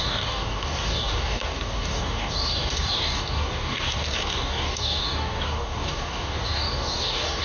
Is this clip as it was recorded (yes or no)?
no